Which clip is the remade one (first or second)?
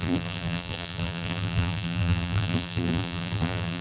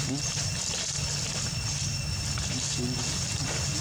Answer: first